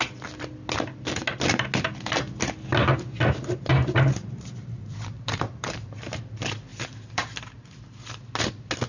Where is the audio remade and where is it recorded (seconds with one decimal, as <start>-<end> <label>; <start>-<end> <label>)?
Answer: 0.0-3.7 recorded; 3.7-6.2 remade; 6.2-6.7 recorded; 6.7-7.4 remade; 7.4-8.9 recorded